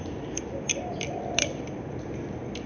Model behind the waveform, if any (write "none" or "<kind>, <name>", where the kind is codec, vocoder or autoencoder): none